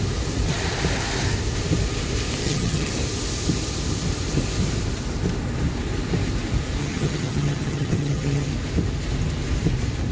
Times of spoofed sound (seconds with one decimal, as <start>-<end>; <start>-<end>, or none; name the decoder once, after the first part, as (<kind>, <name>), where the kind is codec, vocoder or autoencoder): 2.4-2.9 (vocoder, HiFi-GAN); 6.8-8.5